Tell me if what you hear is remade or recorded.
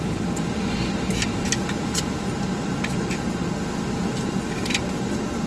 recorded